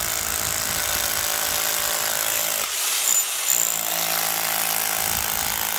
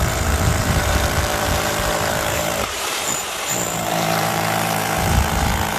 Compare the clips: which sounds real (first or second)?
first